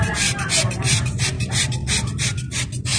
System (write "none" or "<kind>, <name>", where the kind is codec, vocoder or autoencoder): none